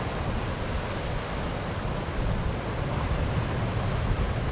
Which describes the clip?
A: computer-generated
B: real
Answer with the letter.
B